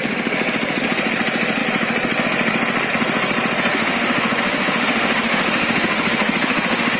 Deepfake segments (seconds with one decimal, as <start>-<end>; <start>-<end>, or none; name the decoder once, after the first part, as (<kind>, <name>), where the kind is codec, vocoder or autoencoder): 3.7-7.0 (autoencoder, DAC-VAE)